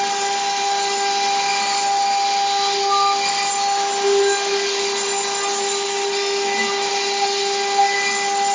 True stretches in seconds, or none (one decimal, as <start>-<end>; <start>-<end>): 0.0-8.5